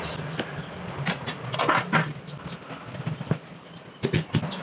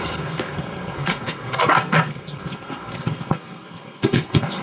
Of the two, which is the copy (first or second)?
second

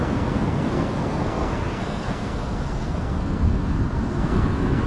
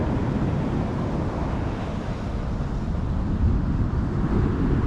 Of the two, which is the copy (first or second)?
first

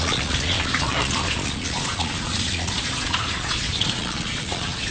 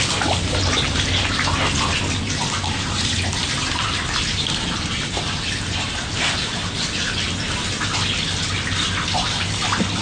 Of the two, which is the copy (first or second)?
first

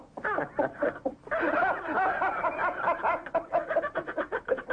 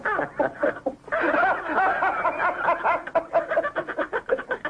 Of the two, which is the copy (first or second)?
first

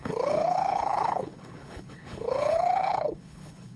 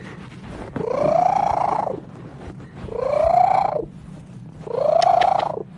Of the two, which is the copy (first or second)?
first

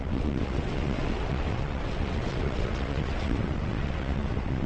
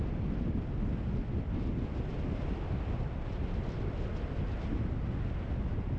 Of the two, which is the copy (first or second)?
first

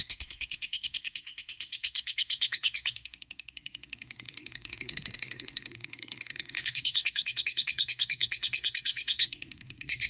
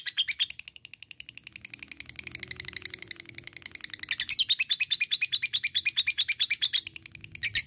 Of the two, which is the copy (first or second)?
first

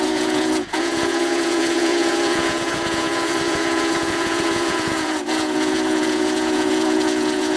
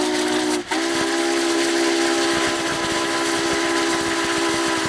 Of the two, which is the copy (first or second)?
first